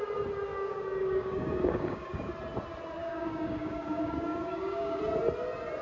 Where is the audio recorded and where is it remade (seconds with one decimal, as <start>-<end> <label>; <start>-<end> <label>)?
0.0-0.5 recorded; 0.5-2.3 remade; 2.3-3.0 recorded; 3.0-5.0 remade; 5.0-5.8 recorded